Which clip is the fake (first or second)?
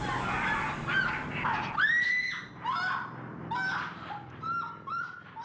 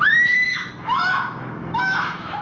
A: second